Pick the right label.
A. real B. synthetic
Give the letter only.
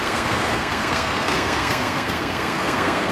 B